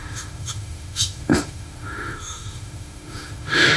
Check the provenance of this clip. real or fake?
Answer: fake